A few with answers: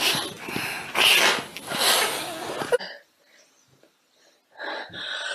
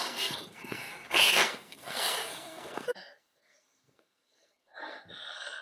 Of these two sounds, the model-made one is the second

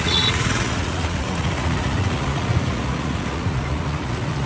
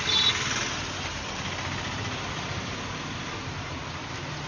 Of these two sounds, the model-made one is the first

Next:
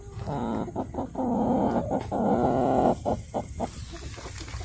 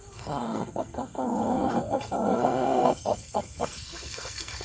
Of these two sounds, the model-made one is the second